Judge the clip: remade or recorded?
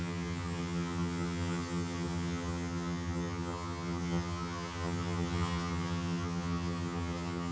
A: remade